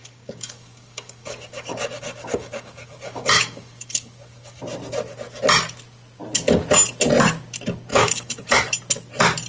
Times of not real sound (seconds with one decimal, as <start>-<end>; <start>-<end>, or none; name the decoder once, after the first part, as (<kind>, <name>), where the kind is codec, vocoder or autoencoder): 0.0-4.6 (codec, DAC); 7.9-8.5